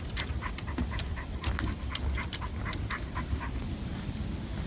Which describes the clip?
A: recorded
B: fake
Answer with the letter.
A